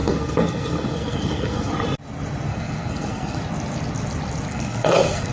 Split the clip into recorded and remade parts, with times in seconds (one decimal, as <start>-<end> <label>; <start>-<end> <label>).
0.0-1.7 remade; 1.7-2.5 recorded; 2.5-3.4 remade; 3.4-4.5 recorded; 4.5-5.3 remade